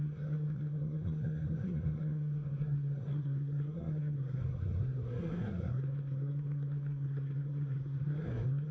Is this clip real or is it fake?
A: fake